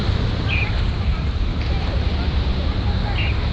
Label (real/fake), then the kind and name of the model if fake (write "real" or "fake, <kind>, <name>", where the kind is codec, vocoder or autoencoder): real